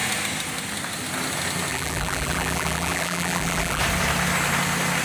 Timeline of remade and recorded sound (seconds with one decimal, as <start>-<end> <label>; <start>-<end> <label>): 0.0-1.7 recorded; 1.7-3.8 remade; 3.8-5.0 recorded

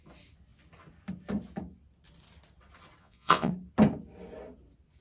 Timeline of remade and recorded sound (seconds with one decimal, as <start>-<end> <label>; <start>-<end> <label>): 0.0-3.0 recorded; 3.0-3.5 remade; 3.5-5.0 recorded

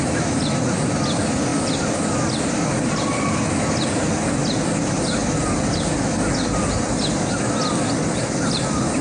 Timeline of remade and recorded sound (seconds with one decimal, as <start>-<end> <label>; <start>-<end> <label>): 0.0-9.0 recorded

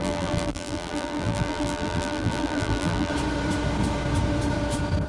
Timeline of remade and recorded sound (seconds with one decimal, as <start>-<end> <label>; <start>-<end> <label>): 0.0-3.1 remade; 3.1-5.1 recorded

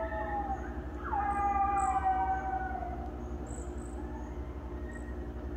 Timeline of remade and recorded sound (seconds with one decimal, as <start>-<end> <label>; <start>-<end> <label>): 0.0-5.6 recorded

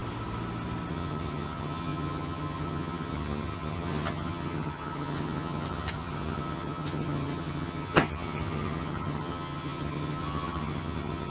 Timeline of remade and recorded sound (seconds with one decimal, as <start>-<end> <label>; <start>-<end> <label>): 0.0-0.9 recorded; 0.9-11.3 remade